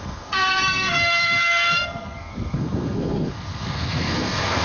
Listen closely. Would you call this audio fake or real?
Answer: fake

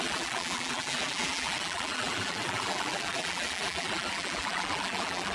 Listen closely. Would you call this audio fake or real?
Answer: fake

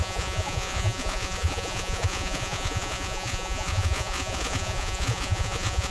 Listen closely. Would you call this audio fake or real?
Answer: fake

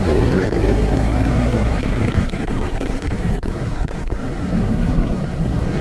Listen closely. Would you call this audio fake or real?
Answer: fake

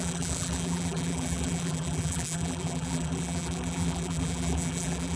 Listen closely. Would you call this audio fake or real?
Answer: fake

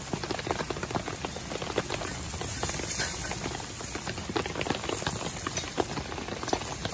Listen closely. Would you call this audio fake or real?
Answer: real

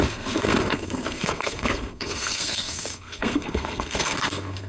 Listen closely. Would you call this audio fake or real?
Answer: fake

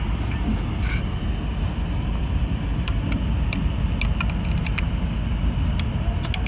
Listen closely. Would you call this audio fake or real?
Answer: real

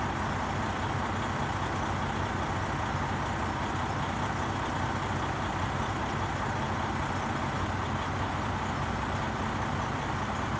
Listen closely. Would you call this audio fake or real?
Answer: real